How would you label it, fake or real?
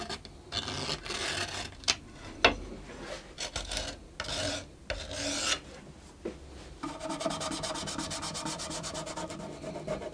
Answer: real